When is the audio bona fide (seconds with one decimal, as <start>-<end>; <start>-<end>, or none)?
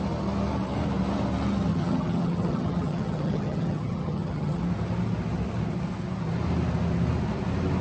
0.0-1.7; 4.6-7.8